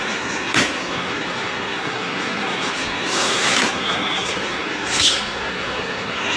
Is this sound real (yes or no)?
no